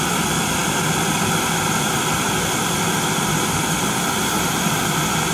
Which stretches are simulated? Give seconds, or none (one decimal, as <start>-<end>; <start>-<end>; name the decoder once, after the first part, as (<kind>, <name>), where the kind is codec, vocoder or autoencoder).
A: none